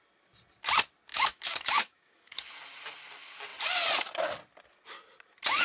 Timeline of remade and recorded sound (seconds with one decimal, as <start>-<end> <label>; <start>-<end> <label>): 0.0-1.1 recorded; 1.1-2.5 remade; 2.5-5.6 recorded